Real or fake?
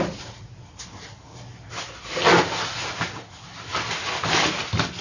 real